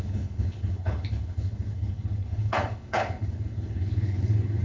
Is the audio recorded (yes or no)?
no